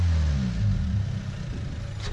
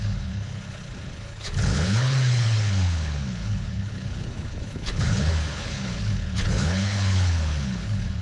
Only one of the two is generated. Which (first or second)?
second